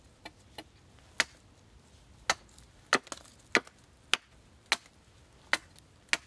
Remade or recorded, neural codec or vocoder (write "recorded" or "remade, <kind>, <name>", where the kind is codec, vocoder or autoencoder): recorded